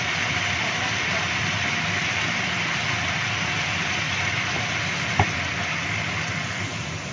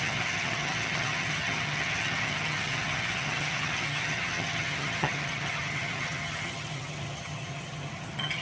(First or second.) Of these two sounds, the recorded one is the first